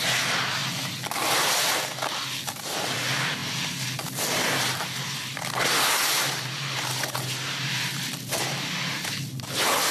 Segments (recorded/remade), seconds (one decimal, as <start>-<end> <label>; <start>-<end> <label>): 0.0-0.6 recorded; 0.6-1.3 remade; 1.3-3.4 recorded; 3.4-4.7 remade; 4.7-9.9 recorded